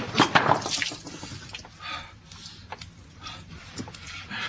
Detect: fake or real fake